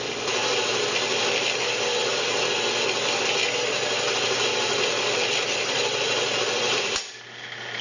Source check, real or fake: real